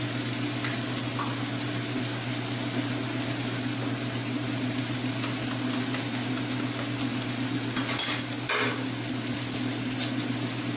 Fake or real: fake